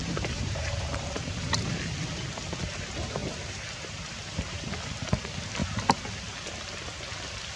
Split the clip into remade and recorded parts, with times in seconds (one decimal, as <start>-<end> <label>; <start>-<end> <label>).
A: 0.0-1.7 remade; 1.7-3.2 recorded; 3.2-4.7 remade; 4.7-7.6 recorded

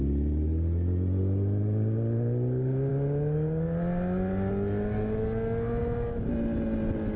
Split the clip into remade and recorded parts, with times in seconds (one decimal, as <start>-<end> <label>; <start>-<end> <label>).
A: 0.0-7.2 recorded

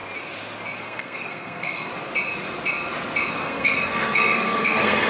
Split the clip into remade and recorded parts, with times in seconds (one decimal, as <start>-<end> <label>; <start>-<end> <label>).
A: 0.0-0.8 recorded; 0.8-1.9 remade; 1.9-3.3 recorded; 3.3-5.1 remade

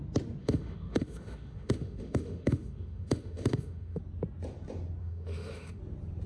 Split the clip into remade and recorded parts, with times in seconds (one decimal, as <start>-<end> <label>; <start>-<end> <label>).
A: 0.0-0.4 recorded; 0.4-4.0 remade; 4.0-5.0 recorded; 5.0-5.8 remade; 5.8-6.3 recorded

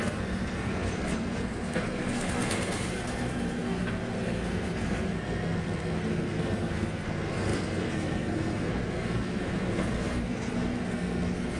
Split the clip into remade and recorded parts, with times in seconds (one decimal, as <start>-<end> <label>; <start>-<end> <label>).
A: 0.0-11.6 remade

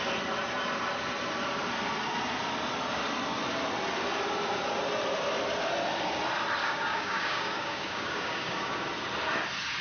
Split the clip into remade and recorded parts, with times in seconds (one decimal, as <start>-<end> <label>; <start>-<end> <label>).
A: 0.0-6.6 recorded; 6.6-8.8 remade; 8.8-9.8 recorded